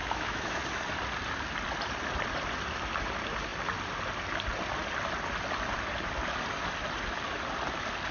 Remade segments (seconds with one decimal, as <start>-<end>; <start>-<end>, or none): 0.0-0.6